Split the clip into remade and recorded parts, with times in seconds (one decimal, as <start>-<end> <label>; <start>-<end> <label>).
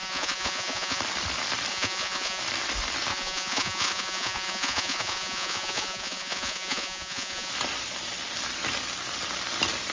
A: 0.0-1.0 remade; 1.0-1.7 recorded; 1.7-2.4 remade; 2.4-3.1 recorded; 3.1-7.5 remade; 7.5-9.9 recorded